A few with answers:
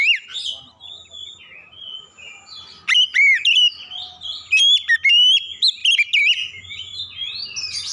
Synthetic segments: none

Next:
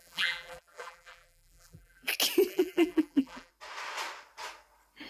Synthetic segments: 0.0-2.1 (vocoder, BigVGAN v2); 2.5-3.5